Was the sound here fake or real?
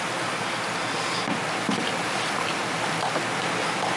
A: real